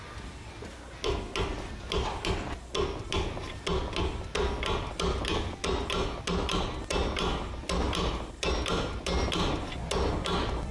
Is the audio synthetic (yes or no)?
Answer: no